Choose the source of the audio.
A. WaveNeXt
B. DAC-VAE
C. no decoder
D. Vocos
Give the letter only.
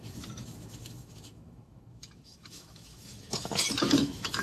B